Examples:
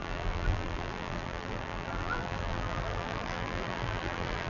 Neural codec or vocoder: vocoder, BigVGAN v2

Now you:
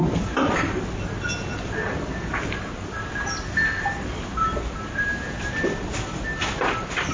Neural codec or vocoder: none